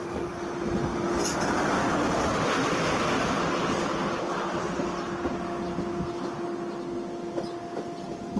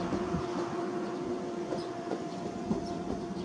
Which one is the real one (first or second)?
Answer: first